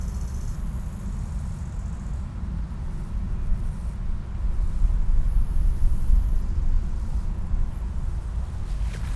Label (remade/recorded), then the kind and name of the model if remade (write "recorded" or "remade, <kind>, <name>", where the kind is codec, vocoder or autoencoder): recorded